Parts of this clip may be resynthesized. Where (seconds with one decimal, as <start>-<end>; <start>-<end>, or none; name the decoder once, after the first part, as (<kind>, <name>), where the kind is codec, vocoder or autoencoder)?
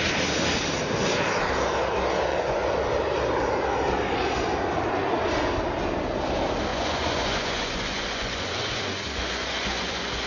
2.3-2.9 (vocoder, Vocos); 6.7-10.3